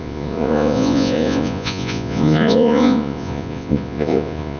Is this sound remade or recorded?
remade